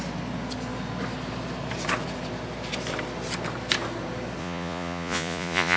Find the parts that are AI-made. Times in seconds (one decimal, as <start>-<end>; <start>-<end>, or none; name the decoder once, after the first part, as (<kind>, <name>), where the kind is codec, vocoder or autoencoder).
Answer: 4.4-5.8 (vocoder, Vocos)